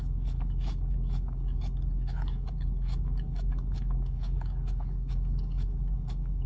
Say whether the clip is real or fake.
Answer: fake